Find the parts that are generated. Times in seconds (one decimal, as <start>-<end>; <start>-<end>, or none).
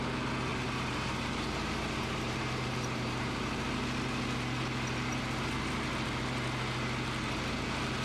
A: 0.5-3.3